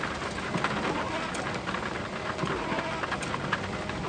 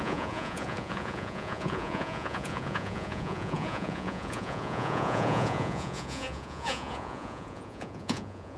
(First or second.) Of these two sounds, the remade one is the second